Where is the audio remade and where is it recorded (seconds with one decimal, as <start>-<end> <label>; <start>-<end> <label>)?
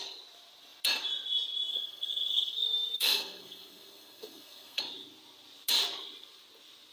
0.0-1.7 recorded; 1.7-4.8 remade; 4.8-6.9 recorded